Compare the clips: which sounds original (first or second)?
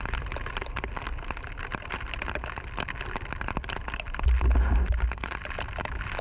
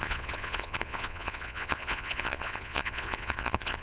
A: first